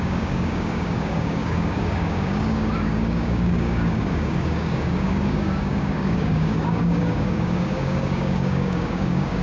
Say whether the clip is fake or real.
fake